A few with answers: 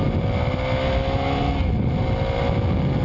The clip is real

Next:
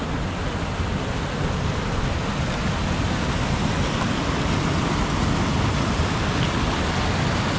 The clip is real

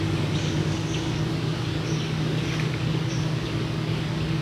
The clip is fake